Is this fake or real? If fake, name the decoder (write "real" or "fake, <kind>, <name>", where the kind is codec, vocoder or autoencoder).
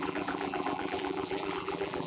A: fake, vocoder, BigVGAN v2